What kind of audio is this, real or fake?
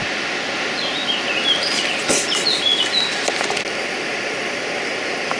real